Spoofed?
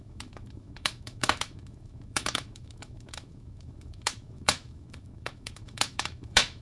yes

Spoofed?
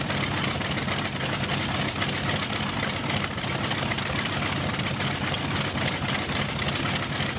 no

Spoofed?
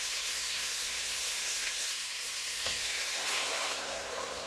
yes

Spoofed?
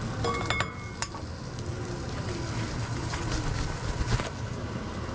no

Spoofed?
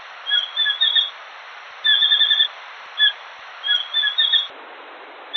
no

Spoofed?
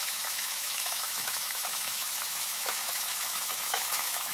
yes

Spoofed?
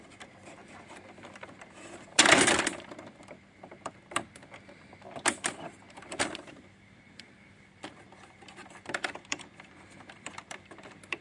yes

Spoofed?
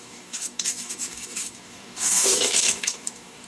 yes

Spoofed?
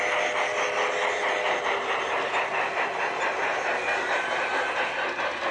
no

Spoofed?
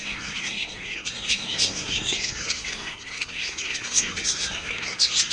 yes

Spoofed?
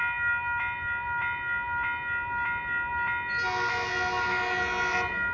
no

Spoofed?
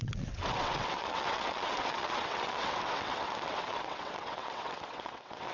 yes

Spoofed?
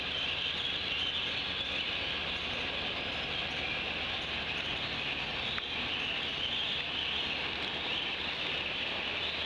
no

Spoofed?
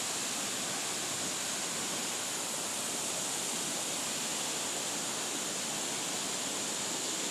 no